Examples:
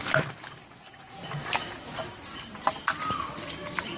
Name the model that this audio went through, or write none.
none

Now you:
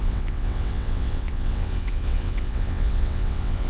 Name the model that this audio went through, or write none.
vocoder, WaveNeXt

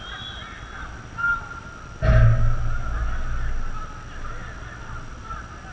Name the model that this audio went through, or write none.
none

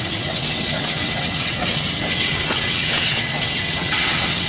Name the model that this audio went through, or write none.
vocoder, WaveNeXt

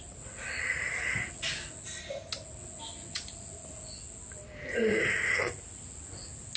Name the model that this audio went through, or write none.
none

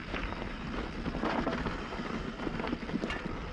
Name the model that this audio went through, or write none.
none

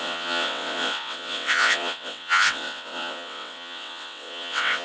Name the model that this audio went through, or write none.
vocoder, WaveNeXt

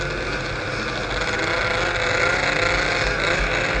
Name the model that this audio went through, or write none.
none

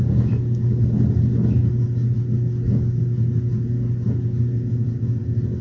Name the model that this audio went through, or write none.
none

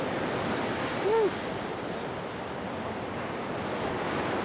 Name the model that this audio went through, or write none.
none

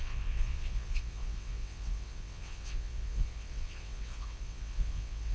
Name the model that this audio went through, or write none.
vocoder, WaveNeXt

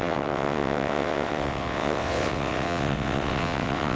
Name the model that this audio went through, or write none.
vocoder, WaveNeXt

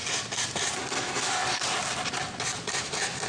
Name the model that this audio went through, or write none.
none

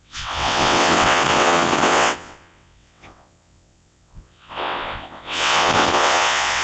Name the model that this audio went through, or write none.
vocoder, WaveNeXt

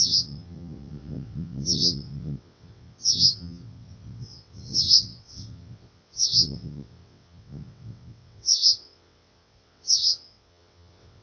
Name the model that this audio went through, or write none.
vocoder, WaveNeXt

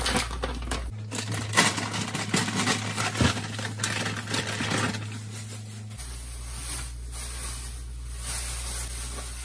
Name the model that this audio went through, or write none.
none